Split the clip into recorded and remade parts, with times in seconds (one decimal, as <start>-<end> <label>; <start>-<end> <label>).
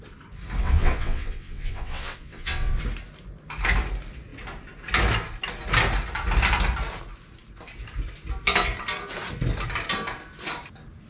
0.0-0.6 recorded; 0.6-2.8 remade; 2.8-11.1 recorded